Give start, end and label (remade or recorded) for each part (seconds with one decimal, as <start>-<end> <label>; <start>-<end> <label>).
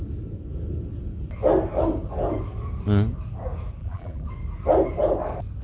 0.0-3.8 recorded; 3.8-4.3 remade; 4.3-5.6 recorded